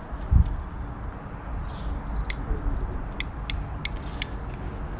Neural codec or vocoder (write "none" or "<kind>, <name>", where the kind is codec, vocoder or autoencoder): none